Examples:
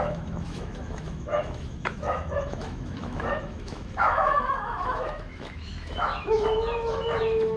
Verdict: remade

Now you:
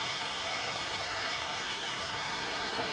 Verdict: remade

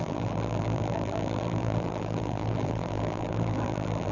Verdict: remade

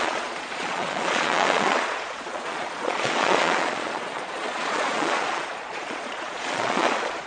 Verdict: remade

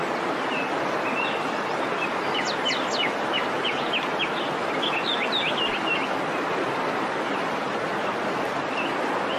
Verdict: recorded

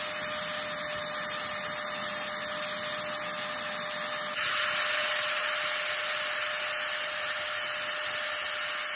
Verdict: recorded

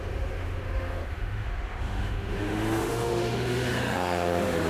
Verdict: remade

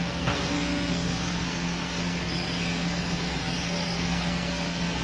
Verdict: remade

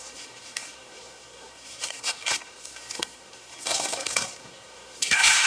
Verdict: remade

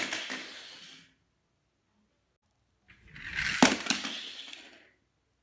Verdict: recorded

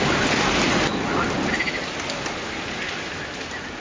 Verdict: recorded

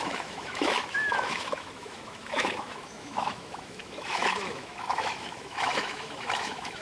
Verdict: remade